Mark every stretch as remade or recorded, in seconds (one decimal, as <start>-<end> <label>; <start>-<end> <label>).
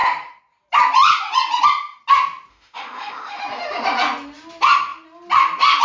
0.0-2.5 recorded; 2.5-3.4 remade; 3.4-5.8 recorded